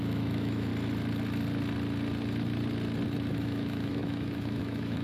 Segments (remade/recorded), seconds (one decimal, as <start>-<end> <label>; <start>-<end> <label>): 0.0-0.7 remade; 0.7-3.3 recorded; 3.3-5.0 remade